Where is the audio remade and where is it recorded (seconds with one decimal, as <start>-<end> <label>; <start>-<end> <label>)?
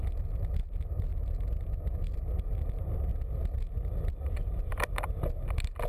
0.0-5.9 recorded